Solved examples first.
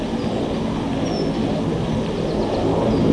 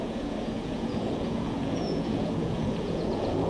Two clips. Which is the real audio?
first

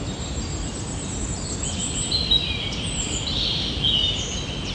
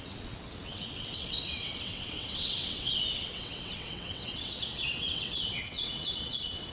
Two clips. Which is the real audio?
first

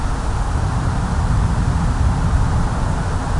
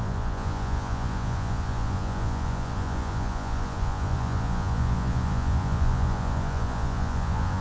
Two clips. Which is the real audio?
first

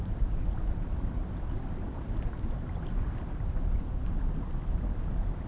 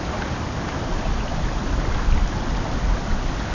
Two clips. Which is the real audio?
second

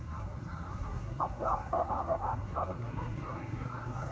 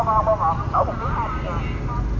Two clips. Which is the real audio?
second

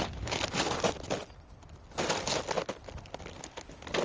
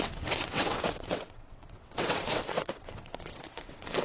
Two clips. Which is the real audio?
first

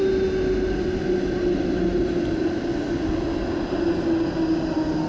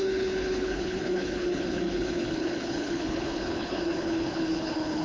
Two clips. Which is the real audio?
first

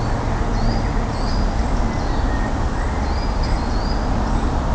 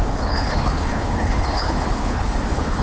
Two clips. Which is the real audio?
first